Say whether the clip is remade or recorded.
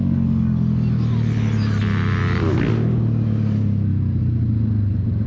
recorded